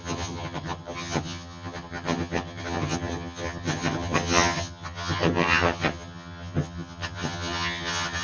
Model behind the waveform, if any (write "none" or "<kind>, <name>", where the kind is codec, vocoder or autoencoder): vocoder, HiFi-GAN